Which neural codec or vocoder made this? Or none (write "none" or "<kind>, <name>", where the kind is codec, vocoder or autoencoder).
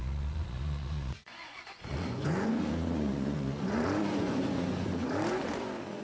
vocoder, Vocos